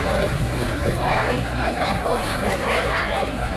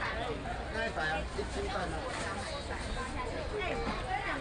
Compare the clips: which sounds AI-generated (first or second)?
first